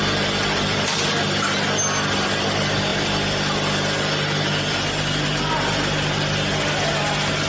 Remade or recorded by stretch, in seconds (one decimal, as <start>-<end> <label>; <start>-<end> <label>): 0.0-7.5 recorded

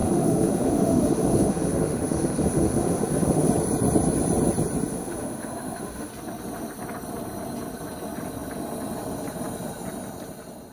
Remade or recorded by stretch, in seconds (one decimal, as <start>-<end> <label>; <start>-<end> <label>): 0.0-3.5 remade; 3.5-4.9 recorded; 4.9-6.1 remade; 6.1-10.7 recorded

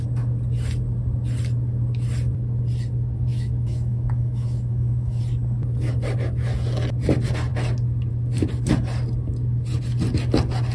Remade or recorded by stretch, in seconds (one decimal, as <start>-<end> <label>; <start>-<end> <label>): 0.0-3.3 recorded; 3.3-5.2 remade; 5.2-10.7 recorded

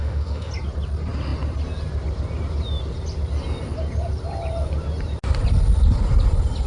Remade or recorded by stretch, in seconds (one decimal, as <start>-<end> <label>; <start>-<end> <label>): 0.0-0.5 remade; 0.5-6.7 recorded

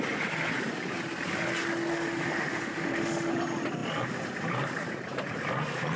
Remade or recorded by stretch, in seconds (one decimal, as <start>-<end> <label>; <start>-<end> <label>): 0.0-1.9 recorded; 1.9-3.3 remade; 3.3-6.0 recorded

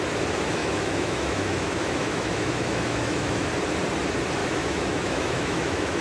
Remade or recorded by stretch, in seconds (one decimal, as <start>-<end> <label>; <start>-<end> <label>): 0.0-0.6 recorded; 0.6-3.5 remade; 3.5-4.4 recorded; 4.4-6.0 remade